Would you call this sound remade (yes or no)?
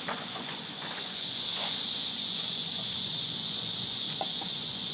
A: yes